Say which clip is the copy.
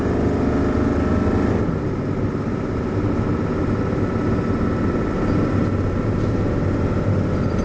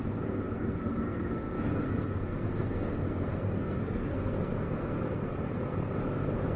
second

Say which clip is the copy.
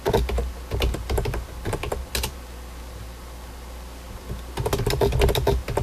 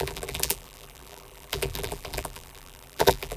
second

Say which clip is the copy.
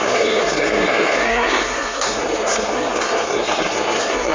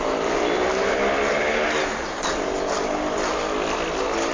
first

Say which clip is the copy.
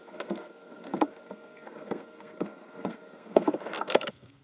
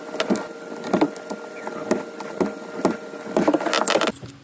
first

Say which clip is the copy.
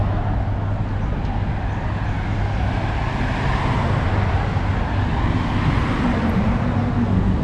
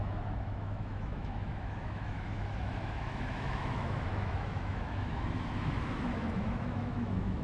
second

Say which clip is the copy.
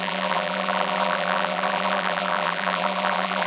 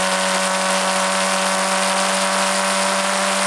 first